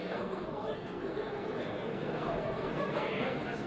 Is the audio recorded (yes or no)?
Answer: no